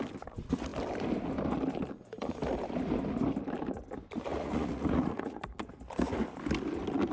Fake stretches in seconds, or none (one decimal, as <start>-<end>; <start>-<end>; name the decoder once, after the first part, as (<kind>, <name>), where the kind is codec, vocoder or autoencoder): 4.3-5.7 (vocoder, Vocos)